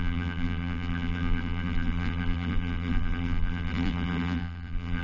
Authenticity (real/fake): fake